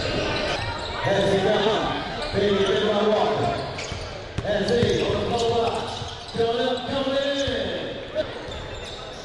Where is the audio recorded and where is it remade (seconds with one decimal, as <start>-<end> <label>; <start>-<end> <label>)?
0.0-1.6 recorded; 1.6-2.2 remade; 2.2-9.2 recorded